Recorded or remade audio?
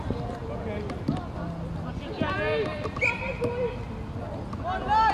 recorded